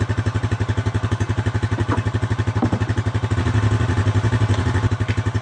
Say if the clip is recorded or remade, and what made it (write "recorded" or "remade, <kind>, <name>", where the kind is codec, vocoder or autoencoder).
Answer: recorded